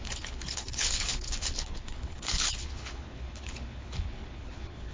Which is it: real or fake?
fake